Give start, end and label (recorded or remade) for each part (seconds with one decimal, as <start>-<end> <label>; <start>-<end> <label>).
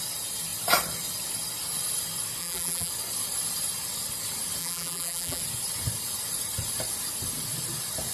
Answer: 0.0-2.4 recorded; 2.4-2.9 remade; 2.9-4.6 recorded; 4.6-5.4 remade; 5.4-8.1 recorded